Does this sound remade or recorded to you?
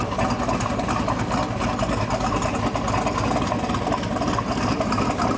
recorded